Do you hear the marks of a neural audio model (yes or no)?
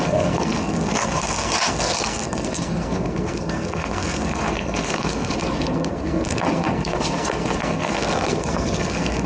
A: yes